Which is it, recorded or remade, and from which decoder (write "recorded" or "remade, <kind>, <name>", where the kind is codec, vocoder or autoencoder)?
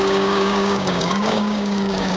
remade, codec, DAC